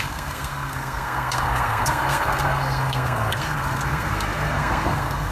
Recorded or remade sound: remade